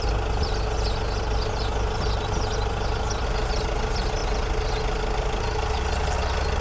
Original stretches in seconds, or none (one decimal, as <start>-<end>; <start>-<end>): 0.0-6.6